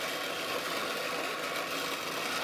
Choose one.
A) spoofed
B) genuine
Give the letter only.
B